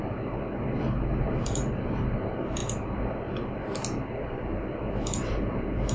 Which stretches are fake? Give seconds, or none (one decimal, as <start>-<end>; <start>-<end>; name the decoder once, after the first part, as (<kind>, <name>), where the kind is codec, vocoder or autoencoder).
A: 0.0-5.9 (vocoder, BigVGAN v2)